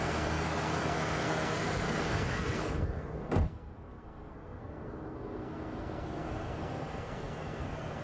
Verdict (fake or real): fake